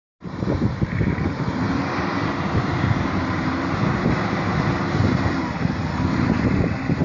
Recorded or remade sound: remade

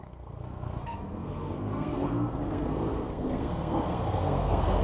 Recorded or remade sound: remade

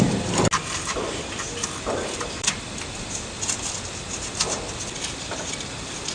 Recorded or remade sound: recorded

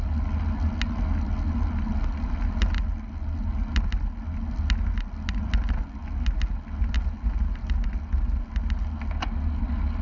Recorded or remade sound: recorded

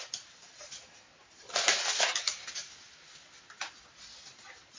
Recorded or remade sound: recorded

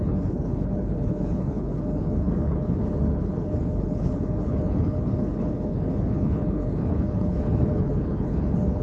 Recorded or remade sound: remade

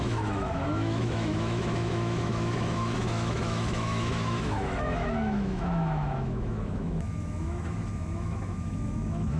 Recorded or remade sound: remade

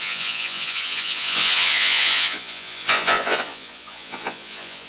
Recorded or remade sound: remade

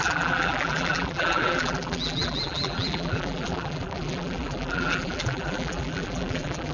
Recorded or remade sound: remade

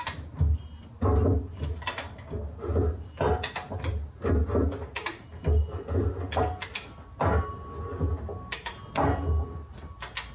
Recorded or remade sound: recorded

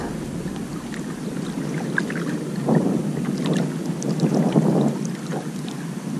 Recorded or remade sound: recorded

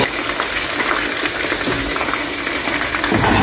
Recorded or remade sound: recorded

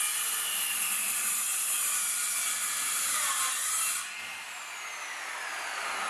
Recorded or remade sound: recorded